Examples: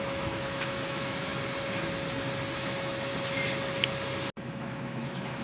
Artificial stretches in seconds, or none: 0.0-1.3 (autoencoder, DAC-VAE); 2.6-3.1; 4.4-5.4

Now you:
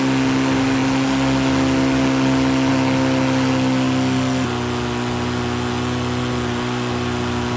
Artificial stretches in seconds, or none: none

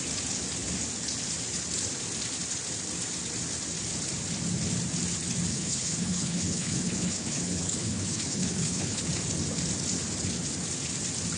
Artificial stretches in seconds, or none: 5.5-9.0 (codec, HILCodec)

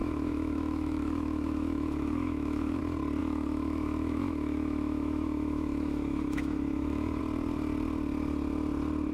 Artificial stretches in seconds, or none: 0.0-2.8 (autoencoder, DAC-VAE); 3.2-7.2